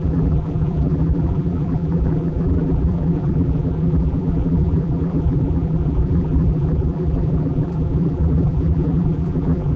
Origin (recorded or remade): remade